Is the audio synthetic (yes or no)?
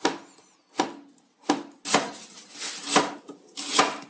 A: no